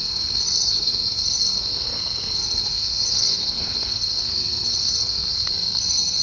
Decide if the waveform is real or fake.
fake